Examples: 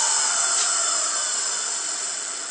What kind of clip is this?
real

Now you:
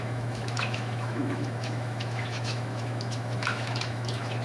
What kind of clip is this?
fake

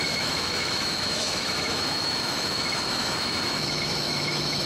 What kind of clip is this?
fake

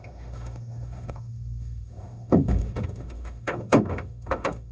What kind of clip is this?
fake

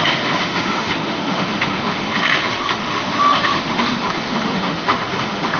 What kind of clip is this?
fake